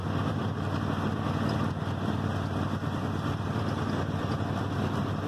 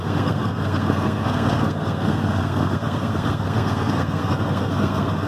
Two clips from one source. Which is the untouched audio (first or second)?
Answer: first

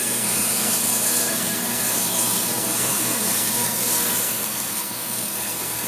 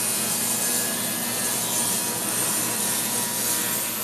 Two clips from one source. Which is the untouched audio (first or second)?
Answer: second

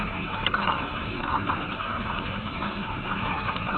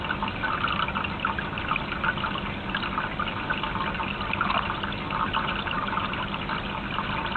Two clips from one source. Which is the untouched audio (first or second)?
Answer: second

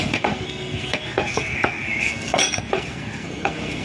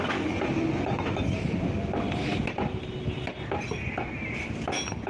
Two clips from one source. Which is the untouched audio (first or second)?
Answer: second